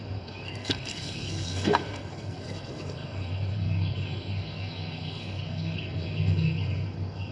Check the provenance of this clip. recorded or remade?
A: remade